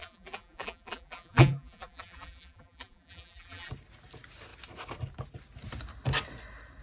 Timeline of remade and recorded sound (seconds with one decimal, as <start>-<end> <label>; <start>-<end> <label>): 0.0-3.7 remade; 3.7-6.8 recorded